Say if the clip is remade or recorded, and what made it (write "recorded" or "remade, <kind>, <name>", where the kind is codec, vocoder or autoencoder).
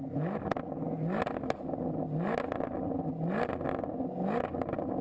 recorded